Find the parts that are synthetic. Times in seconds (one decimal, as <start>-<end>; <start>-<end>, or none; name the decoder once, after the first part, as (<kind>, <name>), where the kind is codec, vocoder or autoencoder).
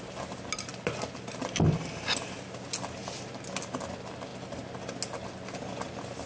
none